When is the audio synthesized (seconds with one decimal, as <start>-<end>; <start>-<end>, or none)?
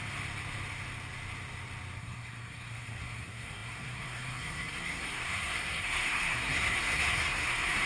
2.0-7.9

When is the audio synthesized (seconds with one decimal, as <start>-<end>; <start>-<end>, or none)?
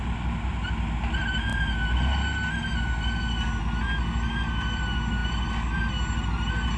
none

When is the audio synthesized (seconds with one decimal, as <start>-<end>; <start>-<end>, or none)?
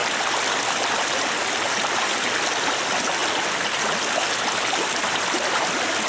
none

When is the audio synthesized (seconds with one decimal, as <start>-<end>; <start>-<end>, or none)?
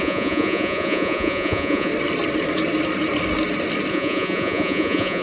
0.0-1.9; 3.9-5.2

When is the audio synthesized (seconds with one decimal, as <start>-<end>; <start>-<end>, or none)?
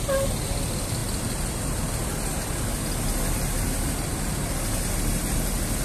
none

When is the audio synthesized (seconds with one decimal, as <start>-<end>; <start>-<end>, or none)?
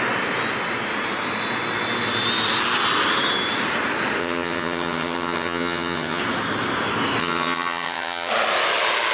4.2-6.2; 7.2-8.3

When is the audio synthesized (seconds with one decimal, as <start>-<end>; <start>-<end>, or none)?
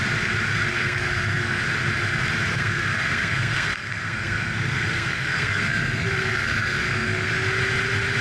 0.5-1.6; 2.5-7.3